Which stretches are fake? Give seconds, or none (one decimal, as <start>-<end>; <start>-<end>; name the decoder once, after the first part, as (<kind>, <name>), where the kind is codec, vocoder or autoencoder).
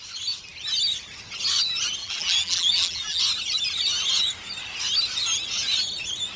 2.0-3.2 (vocoder, BigVGAN v2)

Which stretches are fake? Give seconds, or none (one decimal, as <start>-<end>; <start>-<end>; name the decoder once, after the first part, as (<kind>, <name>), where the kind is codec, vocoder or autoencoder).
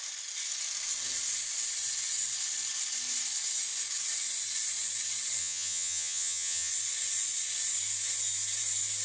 5.4-6.7 (vocoder, HiFi-GAN)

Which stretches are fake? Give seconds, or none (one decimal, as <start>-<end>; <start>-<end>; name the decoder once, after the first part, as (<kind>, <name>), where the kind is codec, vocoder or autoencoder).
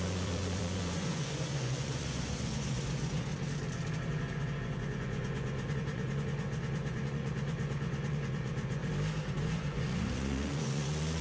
0.0-3.3 (vocoder, Vocos); 4.1-8.8; 9.3-11.2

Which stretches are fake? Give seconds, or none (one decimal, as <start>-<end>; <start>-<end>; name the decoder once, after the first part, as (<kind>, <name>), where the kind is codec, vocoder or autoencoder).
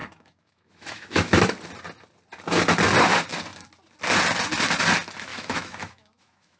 0.0-1.4 (autoencoder, DAC-VAE); 5.3-6.6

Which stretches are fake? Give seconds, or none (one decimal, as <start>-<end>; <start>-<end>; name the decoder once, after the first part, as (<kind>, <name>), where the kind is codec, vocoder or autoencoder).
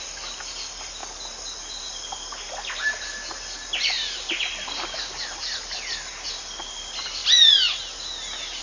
none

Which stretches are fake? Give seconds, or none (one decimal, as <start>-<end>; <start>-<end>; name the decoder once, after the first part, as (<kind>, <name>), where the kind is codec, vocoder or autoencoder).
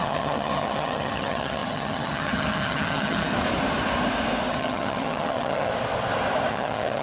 0.0-3.3 (vocoder, HiFi-GAN); 4.5-5.7; 6.5-7.0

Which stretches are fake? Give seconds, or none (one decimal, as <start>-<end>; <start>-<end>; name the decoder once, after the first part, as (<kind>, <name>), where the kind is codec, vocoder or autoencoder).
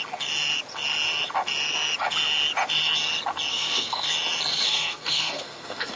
3.5-4.1 (codec, SNAC); 4.5-6.0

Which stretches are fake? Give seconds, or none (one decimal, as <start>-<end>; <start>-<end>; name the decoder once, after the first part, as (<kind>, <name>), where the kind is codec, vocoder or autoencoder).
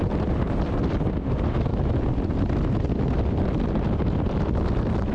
none